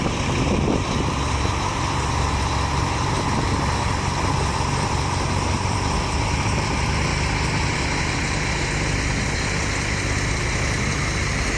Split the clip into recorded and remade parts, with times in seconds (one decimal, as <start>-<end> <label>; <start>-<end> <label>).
0.0-11.6 recorded